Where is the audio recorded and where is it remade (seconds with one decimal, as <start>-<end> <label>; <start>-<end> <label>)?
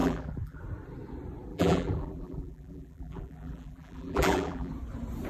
0.0-0.6 remade; 0.6-1.5 recorded; 1.5-4.7 remade; 4.7-5.3 recorded